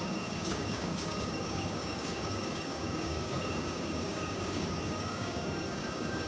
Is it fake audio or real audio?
fake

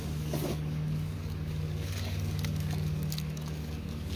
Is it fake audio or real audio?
fake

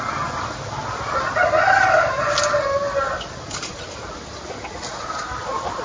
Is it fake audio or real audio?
real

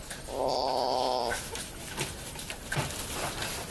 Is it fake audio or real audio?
real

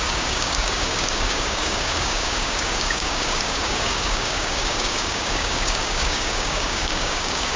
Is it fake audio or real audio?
fake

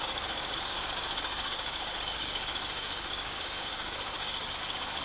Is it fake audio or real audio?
fake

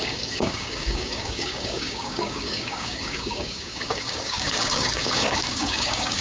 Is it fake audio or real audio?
fake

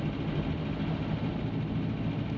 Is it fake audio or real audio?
real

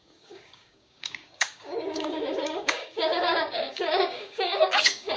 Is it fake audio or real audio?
fake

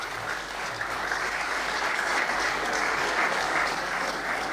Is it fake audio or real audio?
fake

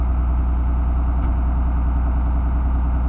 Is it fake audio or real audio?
real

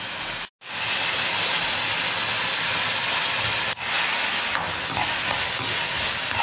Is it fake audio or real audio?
real